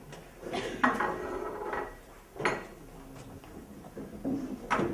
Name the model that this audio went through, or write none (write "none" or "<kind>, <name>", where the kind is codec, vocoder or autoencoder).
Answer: none